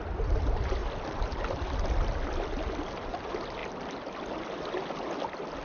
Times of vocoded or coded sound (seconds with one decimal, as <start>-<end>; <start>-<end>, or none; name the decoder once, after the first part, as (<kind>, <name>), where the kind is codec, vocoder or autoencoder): 0.8-1.7 (vocoder, BigVGAN v2)